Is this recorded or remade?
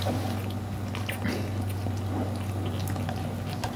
recorded